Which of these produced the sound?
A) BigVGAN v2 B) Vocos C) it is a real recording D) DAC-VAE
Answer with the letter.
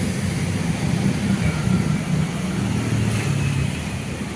C